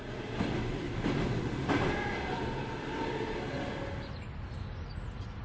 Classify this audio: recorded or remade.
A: recorded